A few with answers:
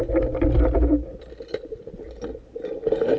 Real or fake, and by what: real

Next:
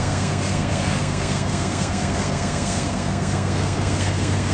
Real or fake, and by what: fake, codec, SNAC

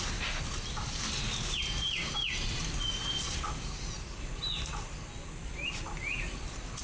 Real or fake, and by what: real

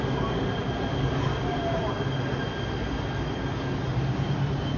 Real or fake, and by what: real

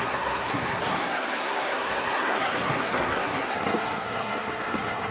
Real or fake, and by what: fake, codec, SNAC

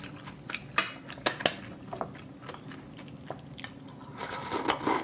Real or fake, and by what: real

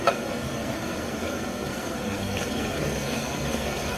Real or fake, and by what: fake, codec, SNAC